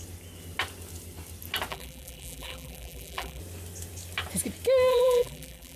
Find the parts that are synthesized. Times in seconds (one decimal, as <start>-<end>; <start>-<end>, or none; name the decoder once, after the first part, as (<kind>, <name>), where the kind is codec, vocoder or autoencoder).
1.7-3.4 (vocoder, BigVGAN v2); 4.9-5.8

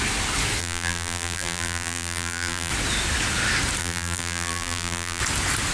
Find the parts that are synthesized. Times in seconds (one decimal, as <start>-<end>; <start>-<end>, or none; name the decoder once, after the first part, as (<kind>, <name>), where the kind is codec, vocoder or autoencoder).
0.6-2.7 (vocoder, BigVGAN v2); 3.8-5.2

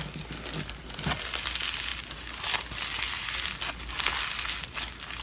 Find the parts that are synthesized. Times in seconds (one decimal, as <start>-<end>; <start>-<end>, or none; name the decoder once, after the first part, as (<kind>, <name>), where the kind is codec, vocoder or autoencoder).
none